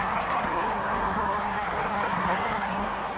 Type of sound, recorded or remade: remade